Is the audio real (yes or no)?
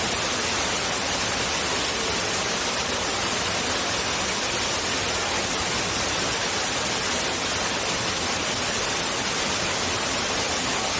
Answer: yes